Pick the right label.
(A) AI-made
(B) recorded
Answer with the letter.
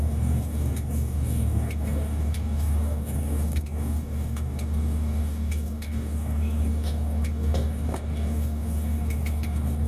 A